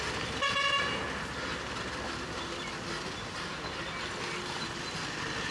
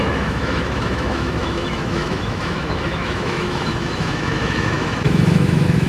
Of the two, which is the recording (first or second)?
first